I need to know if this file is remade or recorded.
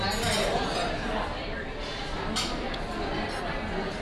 recorded